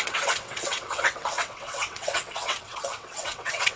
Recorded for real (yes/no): no